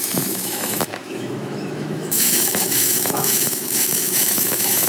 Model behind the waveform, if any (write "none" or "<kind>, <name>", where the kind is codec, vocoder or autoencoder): autoencoder, DAC-VAE